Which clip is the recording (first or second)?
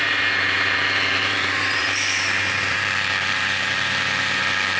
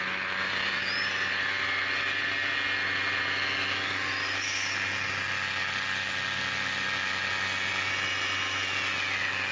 second